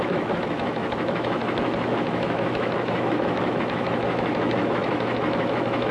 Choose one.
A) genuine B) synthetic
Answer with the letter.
B